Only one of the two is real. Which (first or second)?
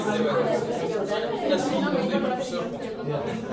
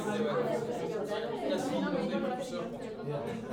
second